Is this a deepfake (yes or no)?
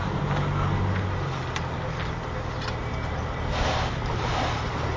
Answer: no